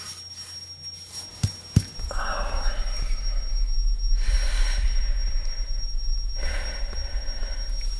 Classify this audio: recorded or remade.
recorded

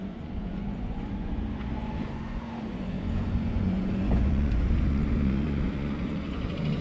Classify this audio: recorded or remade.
remade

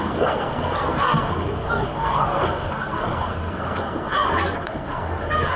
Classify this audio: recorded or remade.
remade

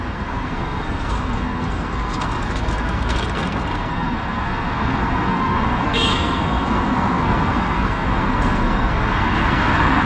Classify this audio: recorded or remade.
remade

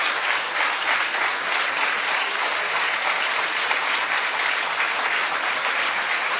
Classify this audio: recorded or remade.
remade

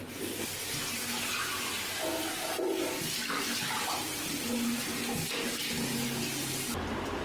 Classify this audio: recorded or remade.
recorded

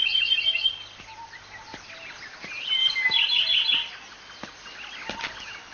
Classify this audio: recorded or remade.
recorded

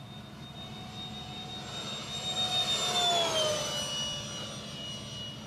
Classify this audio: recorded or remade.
recorded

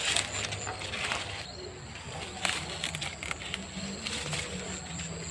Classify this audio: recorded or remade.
recorded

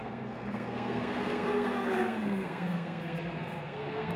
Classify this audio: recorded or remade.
remade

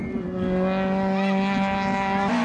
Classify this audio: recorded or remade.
recorded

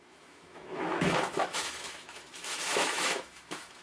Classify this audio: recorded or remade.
remade